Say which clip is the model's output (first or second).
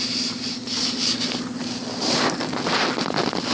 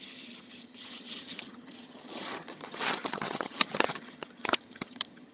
second